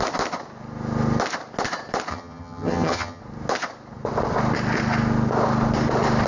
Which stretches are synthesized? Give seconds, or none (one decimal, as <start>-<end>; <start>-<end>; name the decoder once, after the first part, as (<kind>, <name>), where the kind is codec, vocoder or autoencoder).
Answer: 2.1-3.2 (vocoder, HiFi-GAN)